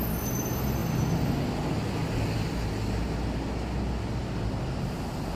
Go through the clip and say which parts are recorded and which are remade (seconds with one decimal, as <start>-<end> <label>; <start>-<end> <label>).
0.0-5.4 recorded